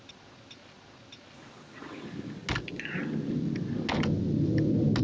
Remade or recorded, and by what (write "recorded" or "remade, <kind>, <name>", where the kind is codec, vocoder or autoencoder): recorded